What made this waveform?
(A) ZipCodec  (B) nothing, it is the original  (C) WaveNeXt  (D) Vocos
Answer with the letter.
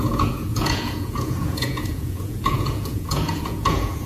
D